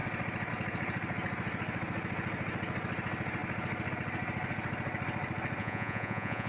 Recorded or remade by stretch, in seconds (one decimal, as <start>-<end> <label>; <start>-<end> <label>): 0.0-5.6 recorded; 5.6-6.5 remade